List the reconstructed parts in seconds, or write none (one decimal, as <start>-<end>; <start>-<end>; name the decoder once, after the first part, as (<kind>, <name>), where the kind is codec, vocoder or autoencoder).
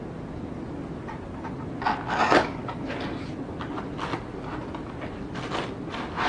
none